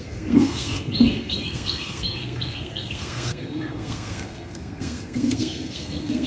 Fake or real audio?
fake